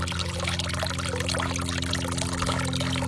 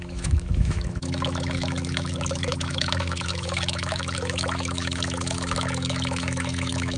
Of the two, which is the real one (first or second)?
first